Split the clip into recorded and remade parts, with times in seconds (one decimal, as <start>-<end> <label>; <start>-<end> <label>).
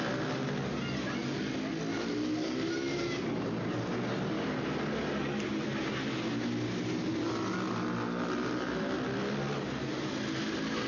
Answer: 0.0-10.9 recorded